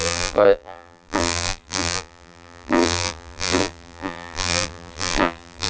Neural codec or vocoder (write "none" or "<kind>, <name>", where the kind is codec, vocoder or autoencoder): vocoder, BigVGAN v2